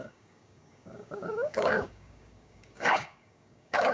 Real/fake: fake